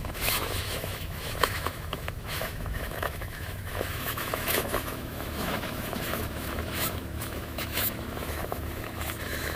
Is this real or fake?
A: fake